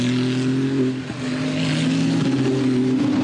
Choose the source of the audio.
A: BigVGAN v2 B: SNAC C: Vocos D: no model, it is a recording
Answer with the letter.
D